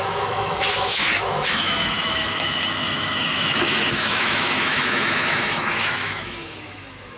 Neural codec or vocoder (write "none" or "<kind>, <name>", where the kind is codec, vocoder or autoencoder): autoencoder, DAC-VAE